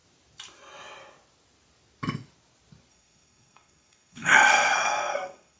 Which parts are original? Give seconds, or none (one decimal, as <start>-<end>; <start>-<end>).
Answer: 0.0-2.9